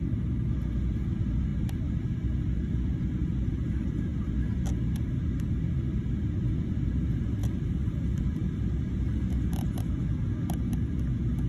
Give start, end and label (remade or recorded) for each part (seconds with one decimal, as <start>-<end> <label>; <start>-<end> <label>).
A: 0.0-7.4 recorded; 7.4-9.9 remade; 9.9-11.5 recorded